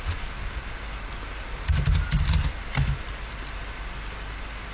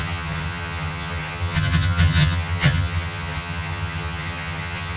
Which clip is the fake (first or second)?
second